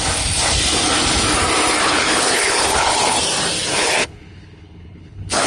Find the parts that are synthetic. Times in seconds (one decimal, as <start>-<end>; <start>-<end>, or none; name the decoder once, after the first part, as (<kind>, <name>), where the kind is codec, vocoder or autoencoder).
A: 1.8-3.2 (codec, HILCodec); 3.7-5.5